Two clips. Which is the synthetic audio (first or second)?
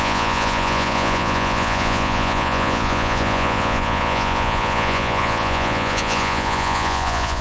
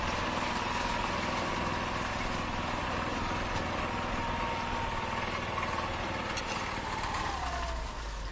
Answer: first